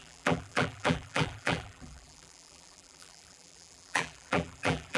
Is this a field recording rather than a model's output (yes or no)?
no